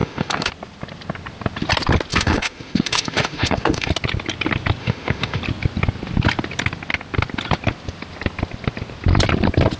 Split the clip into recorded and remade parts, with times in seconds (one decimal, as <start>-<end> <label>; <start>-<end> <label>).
0.0-0.5 remade; 0.5-2.1 recorded; 2.1-3.9 remade; 3.9-4.8 recorded; 4.8-5.4 remade; 5.4-9.8 recorded